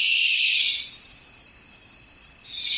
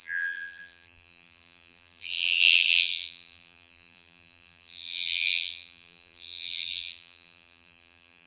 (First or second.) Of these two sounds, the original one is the first